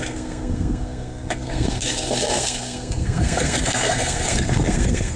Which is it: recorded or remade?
remade